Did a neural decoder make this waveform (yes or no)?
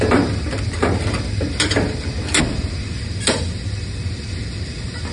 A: no